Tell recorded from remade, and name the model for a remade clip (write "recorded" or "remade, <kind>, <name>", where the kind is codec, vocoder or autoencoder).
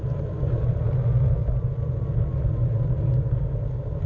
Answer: recorded